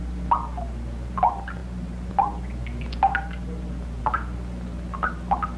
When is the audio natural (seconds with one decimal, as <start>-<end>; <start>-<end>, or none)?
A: 0.0-5.6